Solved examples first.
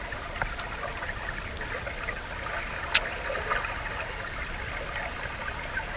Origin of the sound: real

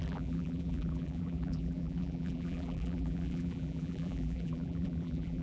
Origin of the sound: fake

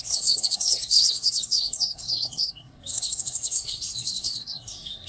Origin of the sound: fake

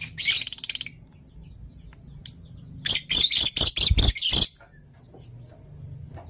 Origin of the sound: real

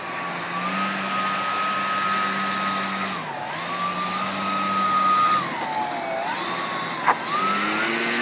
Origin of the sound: real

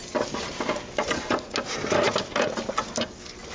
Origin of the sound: real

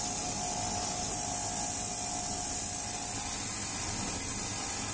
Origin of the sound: real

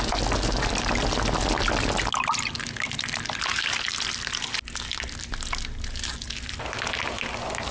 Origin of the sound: real